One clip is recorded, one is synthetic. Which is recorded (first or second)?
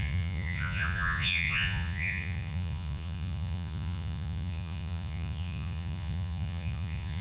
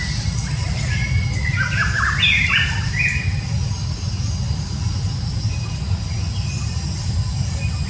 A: second